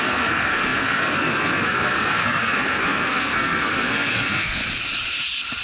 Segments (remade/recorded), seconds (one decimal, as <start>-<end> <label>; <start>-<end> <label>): 0.0-4.6 remade; 4.6-5.6 recorded